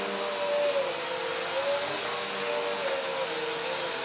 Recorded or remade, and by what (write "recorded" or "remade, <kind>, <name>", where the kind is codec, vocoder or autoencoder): recorded